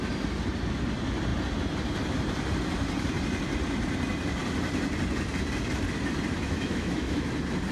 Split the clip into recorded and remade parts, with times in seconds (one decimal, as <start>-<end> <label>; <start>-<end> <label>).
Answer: 0.0-6.4 recorded; 6.4-7.3 remade; 7.3-7.7 recorded

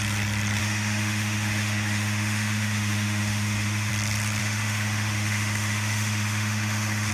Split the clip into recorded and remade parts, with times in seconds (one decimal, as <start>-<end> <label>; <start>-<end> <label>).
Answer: 0.0-0.6 recorded; 0.6-3.9 remade; 3.9-4.4 recorded; 4.4-7.1 remade